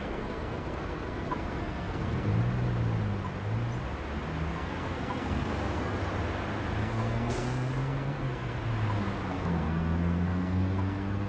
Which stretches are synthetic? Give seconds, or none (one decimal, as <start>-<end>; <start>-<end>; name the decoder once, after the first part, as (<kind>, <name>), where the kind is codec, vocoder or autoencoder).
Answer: 0.0-2.3 (codec, SNAC); 4.5-6.0; 6.8-8.6; 9.3-11.3